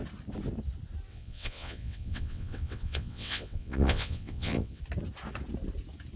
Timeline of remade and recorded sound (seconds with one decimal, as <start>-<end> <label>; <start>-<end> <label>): 0.0-1.1 recorded; 1.1-4.8 remade; 4.8-6.2 recorded